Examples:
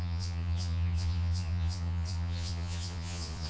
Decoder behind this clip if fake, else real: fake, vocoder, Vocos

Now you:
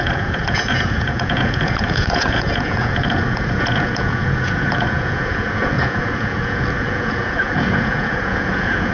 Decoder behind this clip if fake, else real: fake, vocoder, Vocos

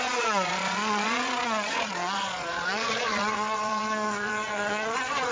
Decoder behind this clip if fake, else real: fake, vocoder, Vocos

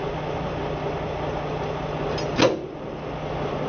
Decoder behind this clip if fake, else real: real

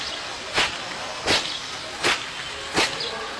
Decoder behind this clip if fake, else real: real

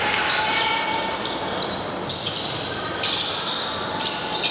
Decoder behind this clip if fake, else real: real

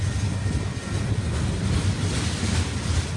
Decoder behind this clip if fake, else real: real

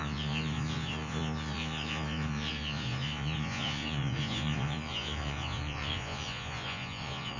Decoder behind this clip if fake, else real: fake, vocoder, Vocos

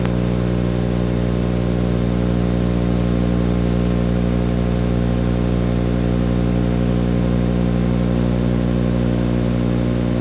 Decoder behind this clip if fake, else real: real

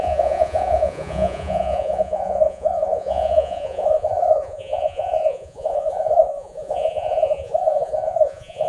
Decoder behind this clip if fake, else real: fake, vocoder, Vocos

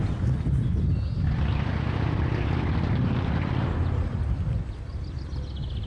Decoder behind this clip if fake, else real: real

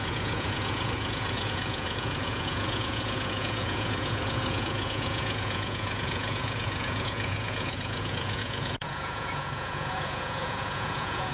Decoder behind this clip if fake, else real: fake, vocoder, Vocos